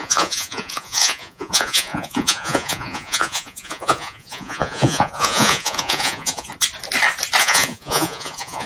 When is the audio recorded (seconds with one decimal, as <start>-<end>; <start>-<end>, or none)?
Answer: 6.5-7.4